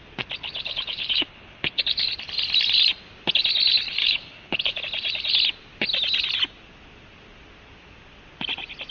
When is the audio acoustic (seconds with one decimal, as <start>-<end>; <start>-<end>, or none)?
0.0-0.4; 1.8-4.0; 4.8-8.9